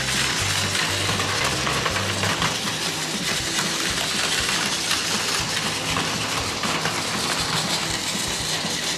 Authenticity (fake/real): real